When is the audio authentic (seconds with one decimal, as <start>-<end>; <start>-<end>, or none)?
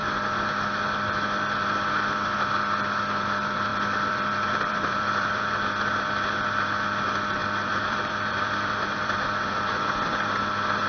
0.0-3.7; 5.5-7.4; 10.4-10.9